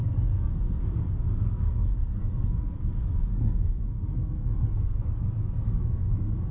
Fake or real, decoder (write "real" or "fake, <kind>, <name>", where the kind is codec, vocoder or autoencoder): fake, codec, SNAC